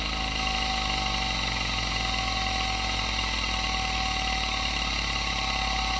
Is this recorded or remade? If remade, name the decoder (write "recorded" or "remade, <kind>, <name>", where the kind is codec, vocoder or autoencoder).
remade, autoencoder, DAC-VAE